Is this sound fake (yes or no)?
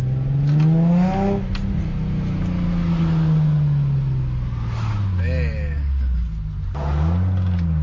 no